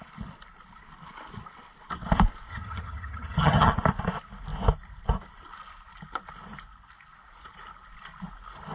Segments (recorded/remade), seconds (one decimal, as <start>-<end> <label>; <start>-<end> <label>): 0.0-2.5 recorded; 2.5-3.7 remade; 3.7-8.7 recorded